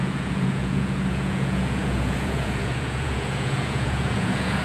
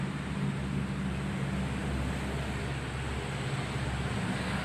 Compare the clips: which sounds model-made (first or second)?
first